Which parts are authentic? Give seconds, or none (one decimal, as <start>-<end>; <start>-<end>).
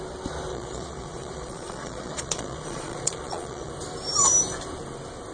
0.0-0.5; 3.7-5.3